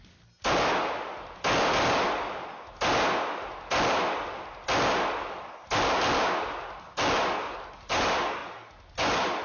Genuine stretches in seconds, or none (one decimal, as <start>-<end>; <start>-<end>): 0.0-9.4